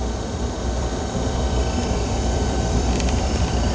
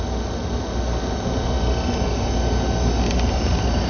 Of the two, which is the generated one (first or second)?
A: first